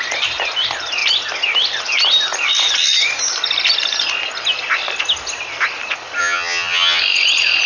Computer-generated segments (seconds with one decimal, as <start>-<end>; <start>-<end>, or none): 6.2-7.0